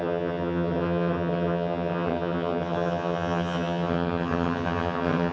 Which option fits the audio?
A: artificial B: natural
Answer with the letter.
A